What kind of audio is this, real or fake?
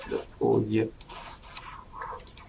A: real